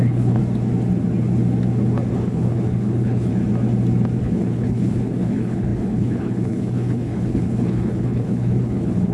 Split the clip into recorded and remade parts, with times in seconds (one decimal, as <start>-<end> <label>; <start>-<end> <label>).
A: 0.0-0.4 remade; 0.4-2.1 recorded; 2.1-3.3 remade; 3.3-4.2 recorded; 4.2-9.1 remade